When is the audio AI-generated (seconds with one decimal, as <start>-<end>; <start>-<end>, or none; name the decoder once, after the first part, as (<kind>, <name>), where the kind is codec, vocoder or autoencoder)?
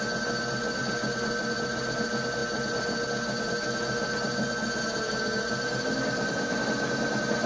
none